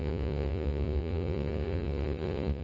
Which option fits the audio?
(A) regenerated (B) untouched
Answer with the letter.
A